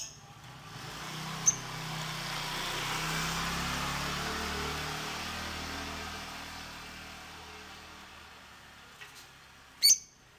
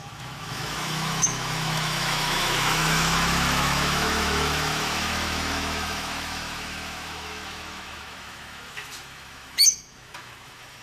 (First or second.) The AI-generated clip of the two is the second